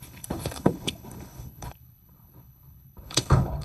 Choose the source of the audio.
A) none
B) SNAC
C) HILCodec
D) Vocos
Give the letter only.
C